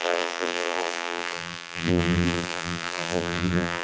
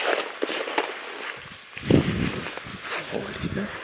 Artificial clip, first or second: first